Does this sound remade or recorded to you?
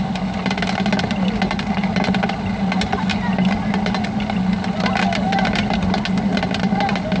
recorded